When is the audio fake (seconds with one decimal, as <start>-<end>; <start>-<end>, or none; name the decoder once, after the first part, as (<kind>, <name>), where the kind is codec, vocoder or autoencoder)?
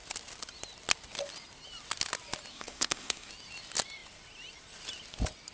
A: 2.5-3.3 (codec, SNAC)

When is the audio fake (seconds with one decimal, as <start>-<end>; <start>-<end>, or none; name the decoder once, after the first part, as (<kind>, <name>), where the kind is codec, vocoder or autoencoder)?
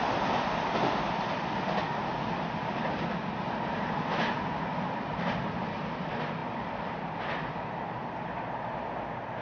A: none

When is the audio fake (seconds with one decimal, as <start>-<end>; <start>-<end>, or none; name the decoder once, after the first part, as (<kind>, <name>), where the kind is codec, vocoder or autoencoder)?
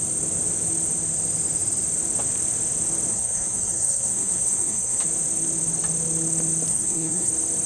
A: 3.1-5.0 (codec, SNAC); 6.7-7.3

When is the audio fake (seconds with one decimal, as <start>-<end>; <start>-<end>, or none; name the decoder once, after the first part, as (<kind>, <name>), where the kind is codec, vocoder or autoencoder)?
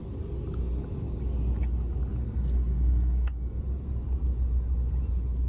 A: 2.2-3.6 (codec, SNAC)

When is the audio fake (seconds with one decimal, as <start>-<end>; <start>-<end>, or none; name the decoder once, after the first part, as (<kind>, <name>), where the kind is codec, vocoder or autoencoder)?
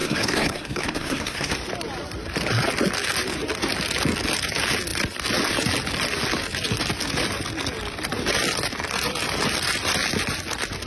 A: 0.0-1.5 (codec, SNAC)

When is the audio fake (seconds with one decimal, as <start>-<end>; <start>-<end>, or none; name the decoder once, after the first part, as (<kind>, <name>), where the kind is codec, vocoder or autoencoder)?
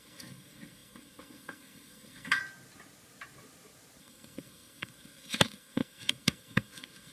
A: 0.0-2.4 (codec, SNAC); 4.0-7.1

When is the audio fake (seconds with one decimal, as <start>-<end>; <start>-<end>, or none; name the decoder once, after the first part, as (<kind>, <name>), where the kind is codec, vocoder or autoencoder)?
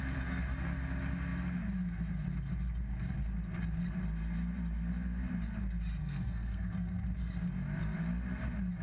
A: 6.0-7.0 (codec, SNAC)